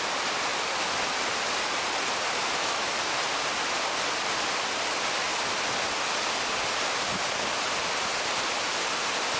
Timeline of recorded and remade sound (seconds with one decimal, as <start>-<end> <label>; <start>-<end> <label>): 0.0-2.6 recorded; 2.6-3.2 remade; 3.2-9.4 recorded